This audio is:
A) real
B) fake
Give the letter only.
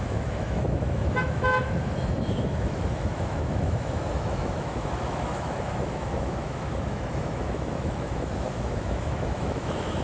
B